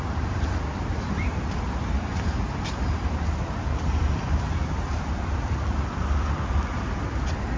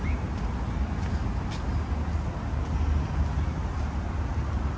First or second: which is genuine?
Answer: second